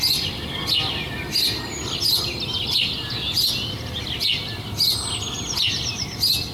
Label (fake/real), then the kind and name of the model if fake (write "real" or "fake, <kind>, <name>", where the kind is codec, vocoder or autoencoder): real